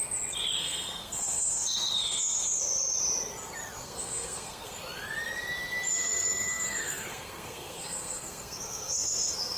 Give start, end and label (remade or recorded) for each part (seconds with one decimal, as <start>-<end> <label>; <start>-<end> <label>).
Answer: 0.0-0.6 recorded; 0.6-2.6 remade; 2.6-3.8 recorded; 3.8-4.8 remade; 4.8-5.9 recorded; 5.9-9.6 remade